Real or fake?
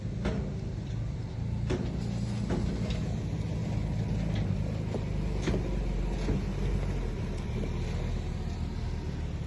real